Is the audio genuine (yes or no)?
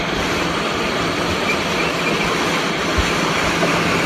yes